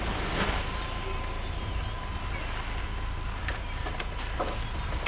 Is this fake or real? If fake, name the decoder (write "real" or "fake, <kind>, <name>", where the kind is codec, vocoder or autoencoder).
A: real